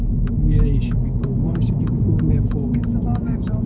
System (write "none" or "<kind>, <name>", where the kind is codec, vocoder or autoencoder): autoencoder, DAC-VAE